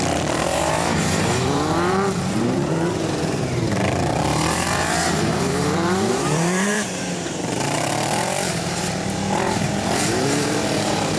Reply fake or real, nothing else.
fake